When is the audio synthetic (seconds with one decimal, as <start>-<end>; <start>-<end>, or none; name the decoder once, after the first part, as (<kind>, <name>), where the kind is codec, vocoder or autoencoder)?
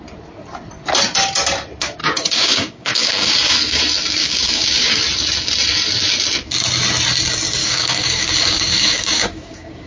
2.0-3.8 (codec, DAC); 4.2-5.0; 7.6-9.9